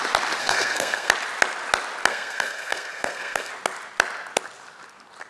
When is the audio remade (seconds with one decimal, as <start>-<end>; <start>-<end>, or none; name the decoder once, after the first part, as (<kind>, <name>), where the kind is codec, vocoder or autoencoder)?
0.4-1.1 (codec, SNAC); 2.1-3.5